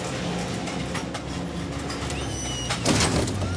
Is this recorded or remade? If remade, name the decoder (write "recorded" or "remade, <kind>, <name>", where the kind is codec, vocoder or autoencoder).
recorded